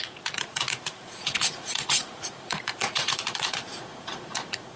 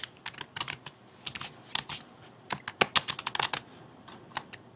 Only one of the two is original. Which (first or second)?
second